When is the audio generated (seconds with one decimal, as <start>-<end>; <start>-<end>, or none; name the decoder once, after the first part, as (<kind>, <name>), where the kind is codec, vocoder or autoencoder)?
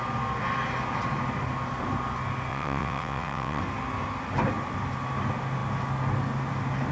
2.5-3.6 (vocoder, WaveNeXt)